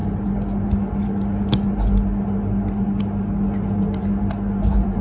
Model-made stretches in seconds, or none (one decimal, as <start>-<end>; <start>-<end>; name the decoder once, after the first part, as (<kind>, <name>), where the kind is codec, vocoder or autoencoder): none